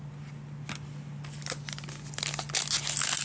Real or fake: real